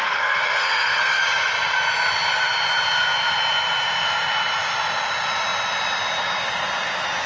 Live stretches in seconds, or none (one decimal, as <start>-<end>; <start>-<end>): 1.2-7.3